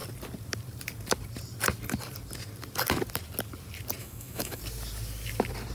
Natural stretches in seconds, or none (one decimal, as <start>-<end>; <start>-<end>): 0.0-4.0; 4.6-5.7